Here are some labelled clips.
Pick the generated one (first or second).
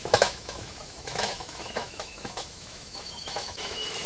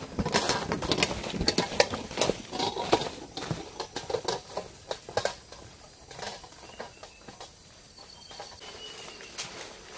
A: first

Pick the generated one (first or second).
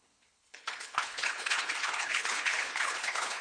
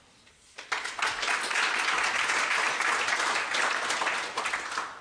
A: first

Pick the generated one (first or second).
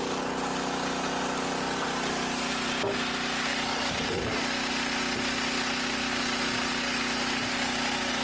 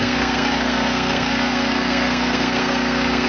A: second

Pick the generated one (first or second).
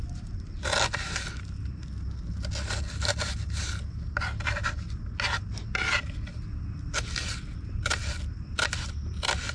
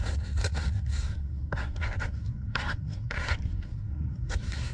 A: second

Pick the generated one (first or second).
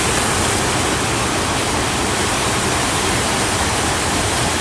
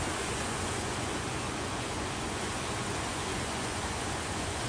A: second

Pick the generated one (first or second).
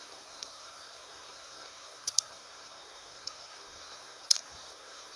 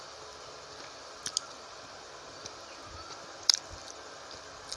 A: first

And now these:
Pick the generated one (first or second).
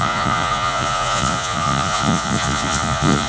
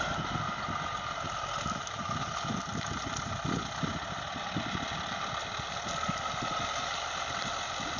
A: first